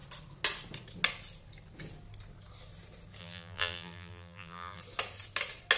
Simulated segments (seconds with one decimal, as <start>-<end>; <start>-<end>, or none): 3.2-4.8